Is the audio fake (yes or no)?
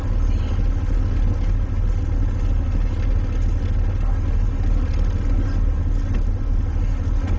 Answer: no